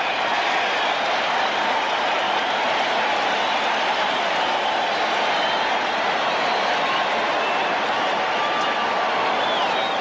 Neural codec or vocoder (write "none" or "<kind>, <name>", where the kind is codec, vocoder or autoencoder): none